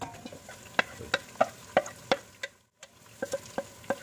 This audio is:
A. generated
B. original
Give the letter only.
B